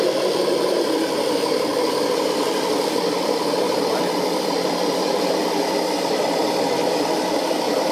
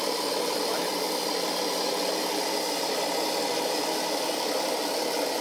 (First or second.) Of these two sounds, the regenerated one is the first